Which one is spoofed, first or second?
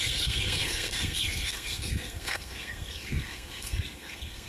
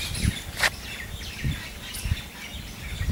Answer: first